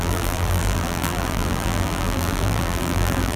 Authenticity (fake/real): fake